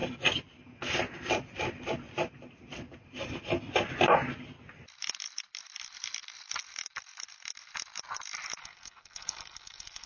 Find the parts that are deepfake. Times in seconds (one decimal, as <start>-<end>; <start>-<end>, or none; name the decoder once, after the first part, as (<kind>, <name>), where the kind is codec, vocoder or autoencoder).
8.6-10.1 (codec, SNAC)